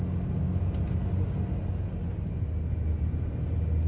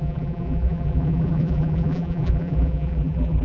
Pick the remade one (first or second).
second